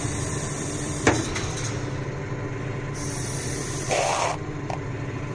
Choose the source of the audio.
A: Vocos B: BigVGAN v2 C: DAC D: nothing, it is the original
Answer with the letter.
B